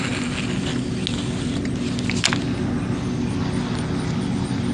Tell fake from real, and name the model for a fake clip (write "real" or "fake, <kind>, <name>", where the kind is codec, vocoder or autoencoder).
real